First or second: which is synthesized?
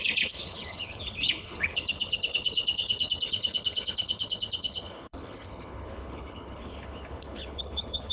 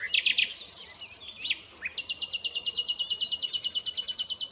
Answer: first